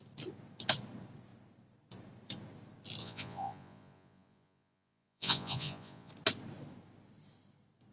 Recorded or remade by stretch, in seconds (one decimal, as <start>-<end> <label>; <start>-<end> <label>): 0.0-3.0 recorded; 3.0-6.1 remade; 6.1-7.9 recorded